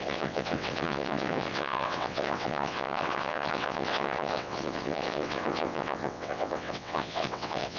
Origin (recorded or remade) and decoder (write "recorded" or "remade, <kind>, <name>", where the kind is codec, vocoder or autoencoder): remade, vocoder, WaveNeXt